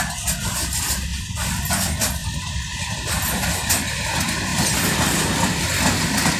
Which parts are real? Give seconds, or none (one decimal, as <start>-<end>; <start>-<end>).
0.0-1.1; 1.7-2.2; 3.7-6.4